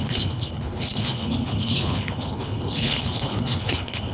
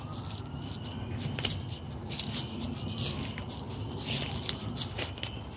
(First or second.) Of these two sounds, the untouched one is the second